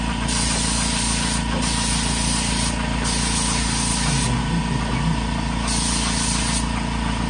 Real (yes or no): yes